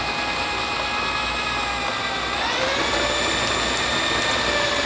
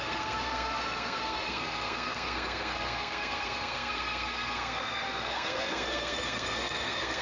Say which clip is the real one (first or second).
first